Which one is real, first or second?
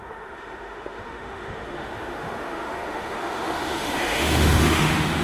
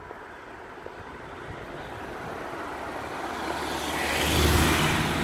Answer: second